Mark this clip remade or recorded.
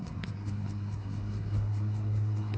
remade